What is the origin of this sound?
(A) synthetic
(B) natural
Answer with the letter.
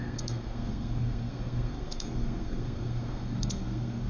A